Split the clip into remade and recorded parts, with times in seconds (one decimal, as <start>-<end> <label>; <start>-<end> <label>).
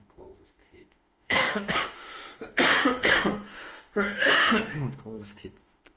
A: 0.0-6.0 remade